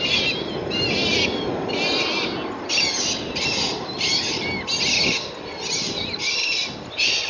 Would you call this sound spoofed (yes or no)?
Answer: no